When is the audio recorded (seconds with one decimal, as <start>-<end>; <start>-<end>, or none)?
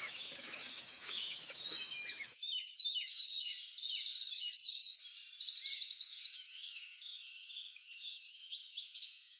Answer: 3.5-4.1; 5.0-5.7